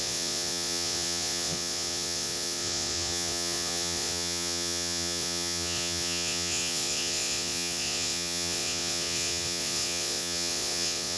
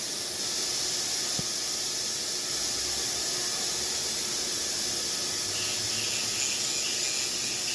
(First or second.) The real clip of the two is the second